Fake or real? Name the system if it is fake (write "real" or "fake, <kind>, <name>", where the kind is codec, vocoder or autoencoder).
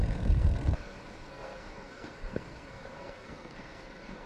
fake, codec, SNAC